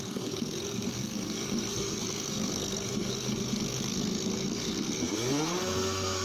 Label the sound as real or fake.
fake